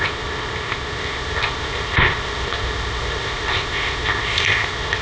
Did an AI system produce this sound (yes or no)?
yes